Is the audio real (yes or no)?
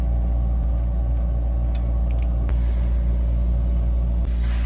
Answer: yes